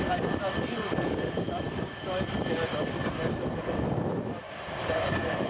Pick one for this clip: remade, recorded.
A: recorded